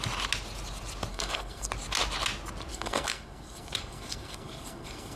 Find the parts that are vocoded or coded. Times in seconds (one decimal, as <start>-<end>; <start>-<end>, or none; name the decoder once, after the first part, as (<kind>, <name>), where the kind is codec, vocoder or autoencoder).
1.1-1.7 (codec, SNAC); 2.7-5.2